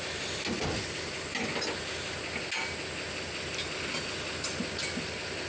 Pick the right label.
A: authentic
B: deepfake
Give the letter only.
A